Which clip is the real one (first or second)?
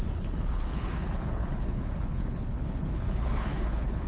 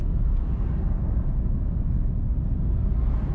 second